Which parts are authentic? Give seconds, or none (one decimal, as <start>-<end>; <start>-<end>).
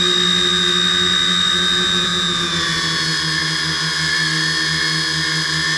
0.0-5.8